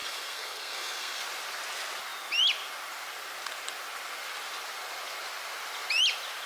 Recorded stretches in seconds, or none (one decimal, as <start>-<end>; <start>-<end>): 1.2-6.5